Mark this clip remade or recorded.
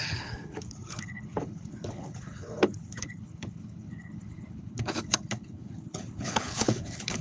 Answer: remade